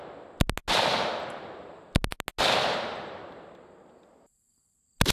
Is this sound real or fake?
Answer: real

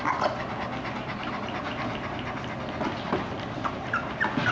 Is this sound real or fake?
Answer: real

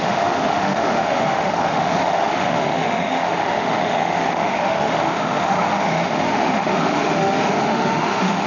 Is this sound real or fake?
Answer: fake